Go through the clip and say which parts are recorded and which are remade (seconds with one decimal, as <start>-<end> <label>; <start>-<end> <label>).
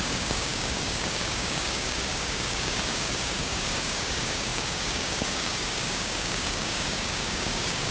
0.0-7.9 remade